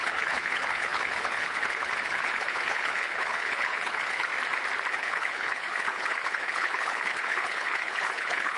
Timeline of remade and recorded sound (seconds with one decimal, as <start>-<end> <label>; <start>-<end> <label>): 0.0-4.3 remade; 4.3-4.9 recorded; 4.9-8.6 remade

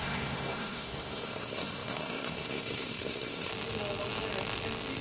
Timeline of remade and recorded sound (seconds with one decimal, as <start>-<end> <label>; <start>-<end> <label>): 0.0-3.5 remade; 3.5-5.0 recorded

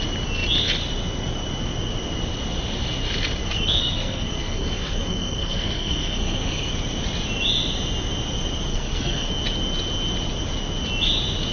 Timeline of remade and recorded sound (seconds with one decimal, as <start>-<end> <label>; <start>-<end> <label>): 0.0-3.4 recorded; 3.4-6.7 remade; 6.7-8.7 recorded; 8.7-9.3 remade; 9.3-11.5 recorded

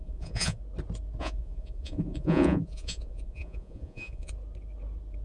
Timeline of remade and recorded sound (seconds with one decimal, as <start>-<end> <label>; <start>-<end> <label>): 0.0-0.6 remade; 0.6-1.2 recorded; 1.2-4.3 remade; 4.3-5.2 recorded